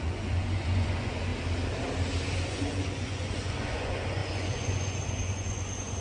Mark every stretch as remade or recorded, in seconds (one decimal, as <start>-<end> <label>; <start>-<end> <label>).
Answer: 0.0-1.3 remade; 1.3-2.5 recorded; 2.5-6.0 remade